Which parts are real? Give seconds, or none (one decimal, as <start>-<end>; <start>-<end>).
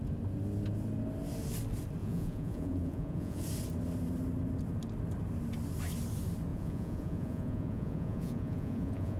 0.0-2.0; 3.4-6.5